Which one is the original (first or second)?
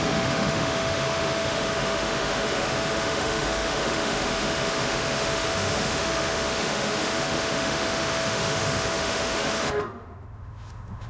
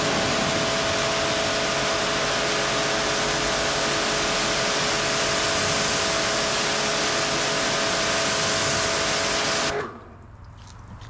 second